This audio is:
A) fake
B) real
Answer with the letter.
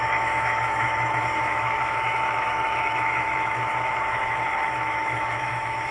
A